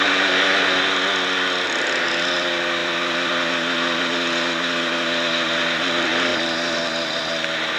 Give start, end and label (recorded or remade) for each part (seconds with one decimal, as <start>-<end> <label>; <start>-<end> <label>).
0.0-2.8 recorded; 2.8-3.5 remade; 3.5-6.3 recorded; 6.3-7.2 remade; 7.2-7.8 recorded